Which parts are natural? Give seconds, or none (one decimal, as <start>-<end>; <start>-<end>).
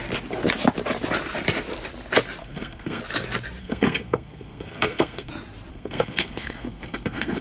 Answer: 0.0-2.4; 3.0-3.6; 5.3-5.7